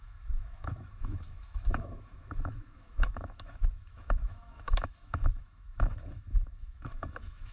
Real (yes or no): no